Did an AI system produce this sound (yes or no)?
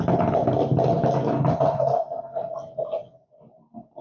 no